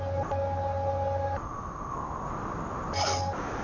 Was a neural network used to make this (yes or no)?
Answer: no